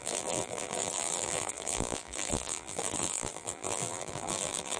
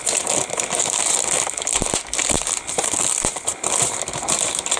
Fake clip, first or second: first